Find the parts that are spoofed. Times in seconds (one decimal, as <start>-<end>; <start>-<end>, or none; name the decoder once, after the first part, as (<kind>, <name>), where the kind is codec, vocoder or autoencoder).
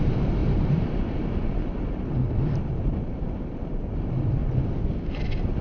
0.0-4.4 (vocoder, BigVGAN v2)